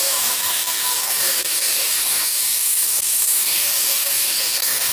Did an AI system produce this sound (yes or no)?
yes